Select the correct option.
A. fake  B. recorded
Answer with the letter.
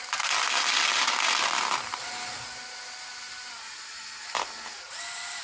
B